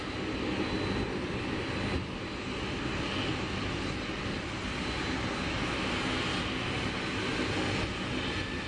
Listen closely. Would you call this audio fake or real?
real